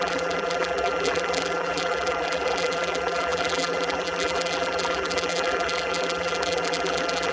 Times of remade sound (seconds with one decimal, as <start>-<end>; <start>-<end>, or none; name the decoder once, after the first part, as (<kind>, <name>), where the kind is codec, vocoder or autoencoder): 0.0-7.3 (vocoder, BigVGAN v2)